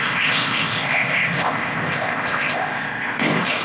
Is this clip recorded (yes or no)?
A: no